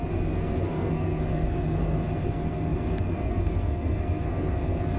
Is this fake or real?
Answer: fake